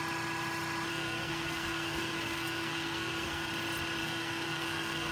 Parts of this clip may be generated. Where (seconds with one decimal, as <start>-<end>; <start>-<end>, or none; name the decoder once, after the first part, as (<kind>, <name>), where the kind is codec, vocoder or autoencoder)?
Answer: 0.9-3.5 (codec, SNAC); 4.0-5.1